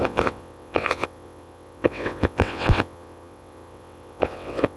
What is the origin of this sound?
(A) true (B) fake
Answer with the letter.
B